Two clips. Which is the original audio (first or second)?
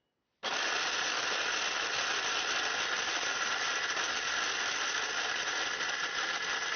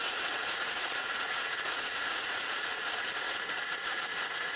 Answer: first